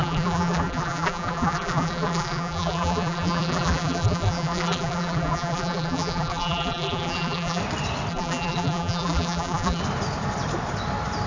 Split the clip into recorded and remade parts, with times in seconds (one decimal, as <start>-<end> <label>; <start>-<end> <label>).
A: 0.0-7.6 remade; 7.6-8.1 recorded; 8.1-9.8 remade; 9.8-11.3 recorded